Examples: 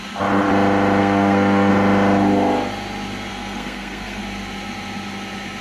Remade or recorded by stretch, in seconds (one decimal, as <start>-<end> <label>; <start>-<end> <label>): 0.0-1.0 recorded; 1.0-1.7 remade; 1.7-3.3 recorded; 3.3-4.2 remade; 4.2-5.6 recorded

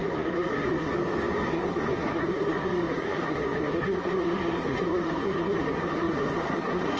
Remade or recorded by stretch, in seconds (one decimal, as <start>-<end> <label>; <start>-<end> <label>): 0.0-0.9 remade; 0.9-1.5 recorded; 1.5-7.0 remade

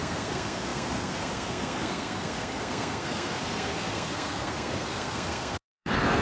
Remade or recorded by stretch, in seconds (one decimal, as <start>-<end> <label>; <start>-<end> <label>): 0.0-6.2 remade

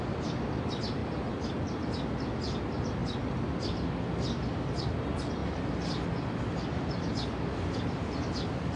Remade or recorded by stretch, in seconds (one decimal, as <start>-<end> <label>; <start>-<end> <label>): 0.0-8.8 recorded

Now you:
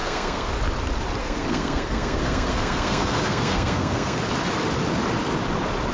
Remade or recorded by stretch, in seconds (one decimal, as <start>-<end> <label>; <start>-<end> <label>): 0.0-0.5 remade; 0.5-1.2 recorded; 1.2-4.2 remade; 4.2-5.9 recorded